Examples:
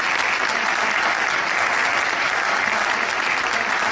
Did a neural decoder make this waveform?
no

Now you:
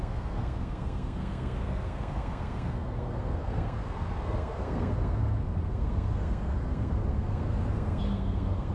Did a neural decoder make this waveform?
yes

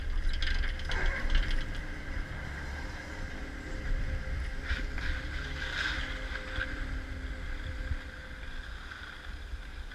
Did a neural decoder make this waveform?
no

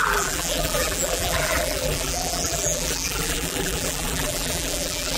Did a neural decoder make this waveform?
yes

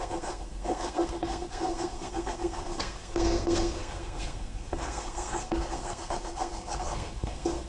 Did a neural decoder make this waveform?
yes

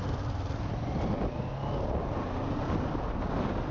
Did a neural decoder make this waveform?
no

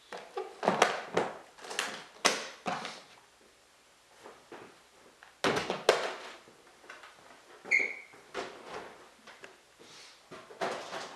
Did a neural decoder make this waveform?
no